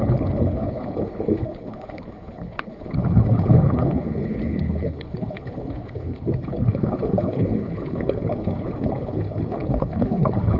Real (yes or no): no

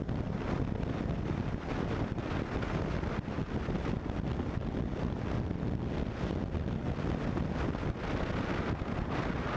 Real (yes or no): yes